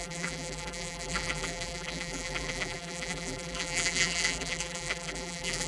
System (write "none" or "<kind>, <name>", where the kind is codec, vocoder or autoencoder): vocoder, BigVGAN v2